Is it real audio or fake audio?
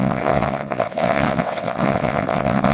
fake